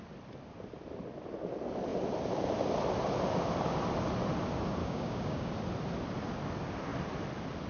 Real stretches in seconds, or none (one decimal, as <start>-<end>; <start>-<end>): 0.0-4.8; 5.5-7.7